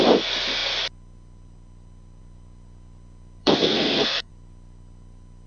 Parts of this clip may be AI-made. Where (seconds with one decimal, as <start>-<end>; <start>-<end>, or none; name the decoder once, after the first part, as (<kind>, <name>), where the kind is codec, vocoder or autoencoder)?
3.4-4.3 (codec, SNAC)